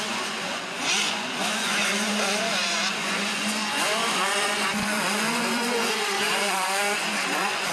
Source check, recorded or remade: remade